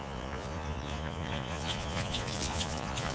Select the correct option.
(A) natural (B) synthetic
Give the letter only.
B